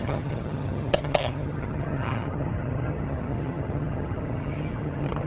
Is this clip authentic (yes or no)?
no